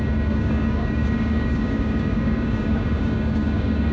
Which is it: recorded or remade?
remade